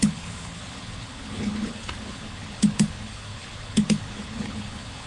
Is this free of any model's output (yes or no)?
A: no